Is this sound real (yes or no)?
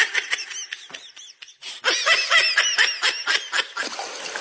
yes